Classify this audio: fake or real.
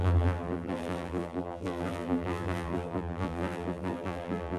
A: fake